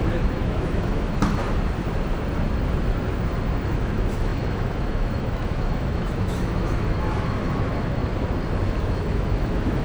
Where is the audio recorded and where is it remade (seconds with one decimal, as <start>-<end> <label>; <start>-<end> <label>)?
0.0-1.4 remade; 1.4-3.7 recorded; 3.7-8.0 remade; 8.0-8.8 recorded; 8.8-9.8 remade